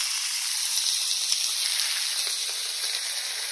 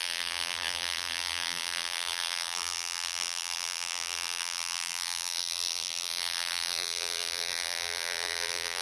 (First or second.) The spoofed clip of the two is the second